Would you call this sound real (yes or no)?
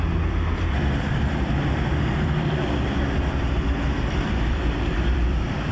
no